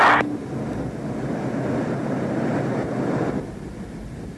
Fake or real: real